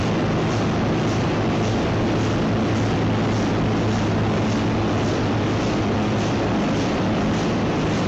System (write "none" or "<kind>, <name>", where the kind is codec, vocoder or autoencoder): none